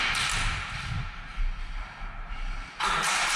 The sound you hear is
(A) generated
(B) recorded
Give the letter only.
B